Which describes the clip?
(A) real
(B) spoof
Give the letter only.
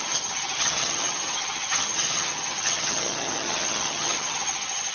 B